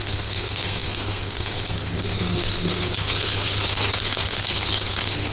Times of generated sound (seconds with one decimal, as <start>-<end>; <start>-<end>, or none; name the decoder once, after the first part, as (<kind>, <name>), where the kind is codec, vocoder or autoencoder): 0.0-5.3 (codec, SNAC)